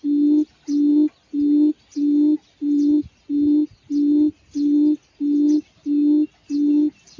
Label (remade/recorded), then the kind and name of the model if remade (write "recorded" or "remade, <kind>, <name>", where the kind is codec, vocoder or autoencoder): recorded